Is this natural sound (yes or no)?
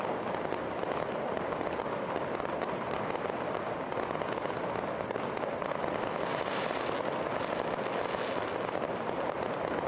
yes